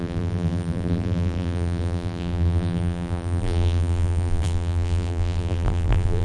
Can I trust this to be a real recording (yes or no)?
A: no